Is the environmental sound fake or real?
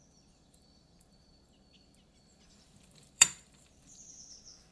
fake